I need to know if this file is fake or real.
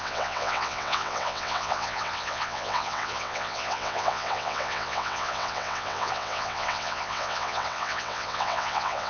fake